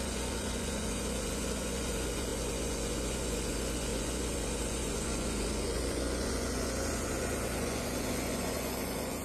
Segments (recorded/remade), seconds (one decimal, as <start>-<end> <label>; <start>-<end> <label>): 0.0-9.2 remade